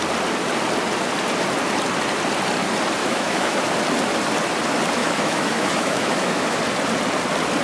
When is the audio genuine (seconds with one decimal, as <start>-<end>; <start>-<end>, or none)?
0.0-3.0; 3.6-5.0; 6.6-7.6